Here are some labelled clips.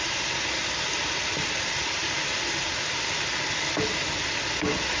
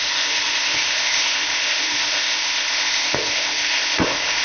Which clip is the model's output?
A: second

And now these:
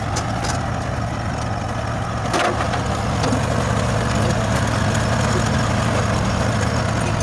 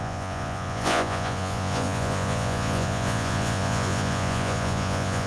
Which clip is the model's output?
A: second